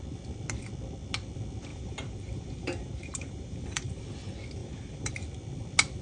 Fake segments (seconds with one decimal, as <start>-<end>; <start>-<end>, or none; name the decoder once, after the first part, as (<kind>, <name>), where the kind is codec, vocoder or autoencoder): 1.7-4.0 (vocoder, BigVGAN v2); 4.6-5.1